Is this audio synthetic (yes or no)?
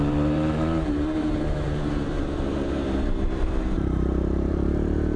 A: yes